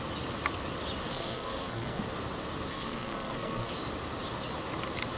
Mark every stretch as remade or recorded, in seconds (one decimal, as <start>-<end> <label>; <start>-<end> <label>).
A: 0.0-1.1 recorded; 1.1-2.0 remade; 2.0-2.7 recorded; 2.7-3.7 remade; 3.7-5.2 recorded